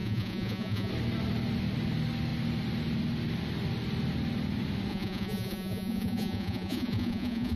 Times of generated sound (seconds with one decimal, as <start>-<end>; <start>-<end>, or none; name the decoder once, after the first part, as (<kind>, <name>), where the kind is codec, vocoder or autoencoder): 0.0-0.9 (vocoder, Vocos); 4.9-7.6